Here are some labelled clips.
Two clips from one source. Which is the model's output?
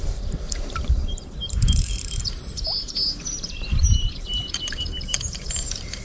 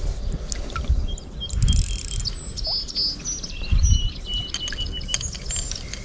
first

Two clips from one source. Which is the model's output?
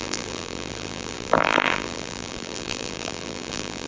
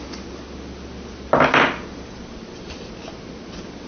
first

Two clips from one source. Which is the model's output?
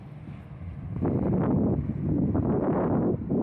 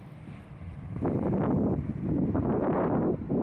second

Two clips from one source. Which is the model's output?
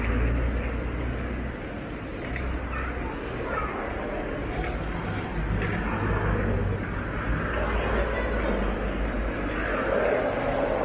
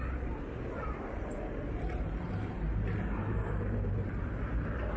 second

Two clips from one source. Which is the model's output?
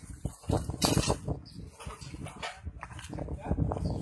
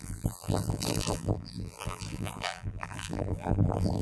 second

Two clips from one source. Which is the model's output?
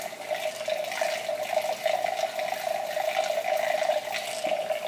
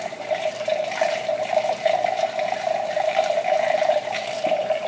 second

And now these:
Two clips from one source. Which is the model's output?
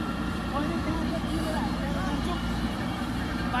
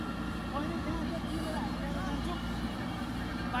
first